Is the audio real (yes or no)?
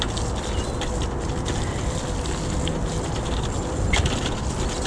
yes